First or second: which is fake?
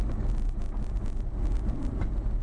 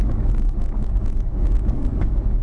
second